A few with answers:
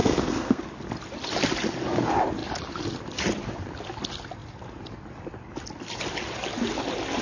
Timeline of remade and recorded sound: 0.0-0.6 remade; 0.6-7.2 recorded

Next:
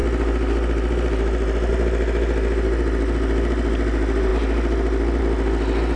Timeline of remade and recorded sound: 0.0-6.0 recorded

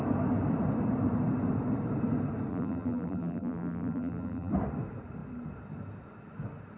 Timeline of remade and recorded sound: 0.0-2.5 recorded; 2.5-4.5 remade; 4.5-6.8 recorded

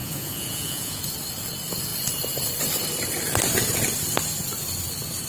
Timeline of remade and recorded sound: 0.0-1.0 remade; 1.0-5.3 recorded